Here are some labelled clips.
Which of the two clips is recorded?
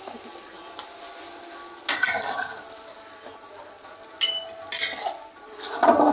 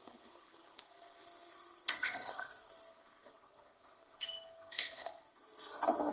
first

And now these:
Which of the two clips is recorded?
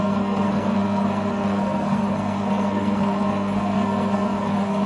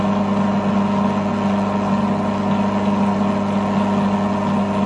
second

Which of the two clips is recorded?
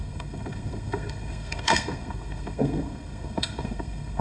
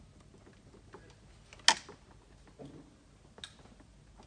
second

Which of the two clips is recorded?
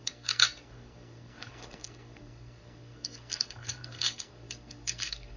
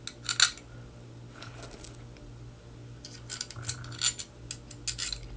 second